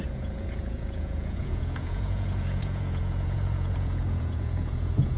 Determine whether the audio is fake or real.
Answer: fake